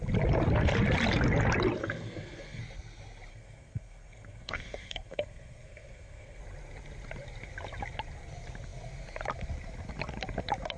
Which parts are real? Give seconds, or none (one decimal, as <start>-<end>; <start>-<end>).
0.0-1.8; 2.6-3.3; 6.4-10.8